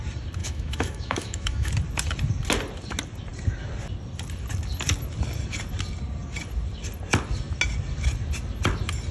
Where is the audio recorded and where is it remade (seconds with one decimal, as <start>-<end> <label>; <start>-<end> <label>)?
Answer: 0.0-0.4 recorded; 0.4-1.7 remade; 1.7-9.1 recorded